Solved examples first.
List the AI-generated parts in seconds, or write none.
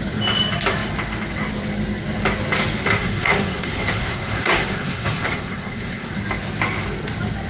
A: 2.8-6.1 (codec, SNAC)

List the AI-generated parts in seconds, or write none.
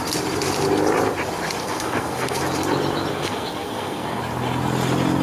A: 1.6-2.4 (codec, SNAC); 3.1-4.2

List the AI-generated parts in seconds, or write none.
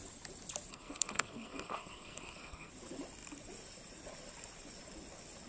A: 0.7-2.7 (codec, SNAC)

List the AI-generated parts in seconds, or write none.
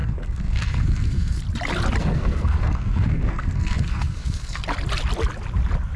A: 0.0-1.4 (codec, SNAC); 2.0-4.6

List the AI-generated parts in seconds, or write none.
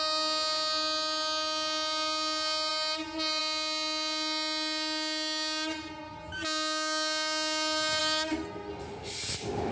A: 8.0-8.7 (codec, SNAC)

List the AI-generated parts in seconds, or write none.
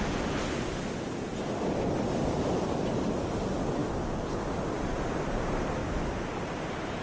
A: none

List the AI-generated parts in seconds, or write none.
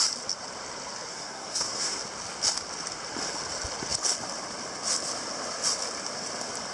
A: 1.1-2.0 (codec, SNAC)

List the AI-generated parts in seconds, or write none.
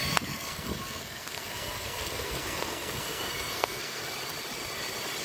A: 0.0-4.0 (codec, SNAC)